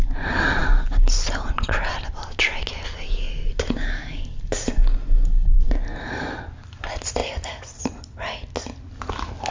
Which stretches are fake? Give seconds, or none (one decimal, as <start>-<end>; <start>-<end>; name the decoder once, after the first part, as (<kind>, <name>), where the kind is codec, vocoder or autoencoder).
none